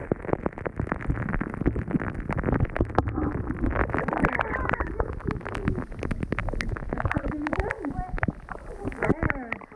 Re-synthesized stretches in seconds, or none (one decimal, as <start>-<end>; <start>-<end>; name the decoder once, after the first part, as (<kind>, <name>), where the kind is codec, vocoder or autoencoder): none